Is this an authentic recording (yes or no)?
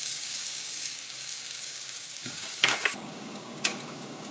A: no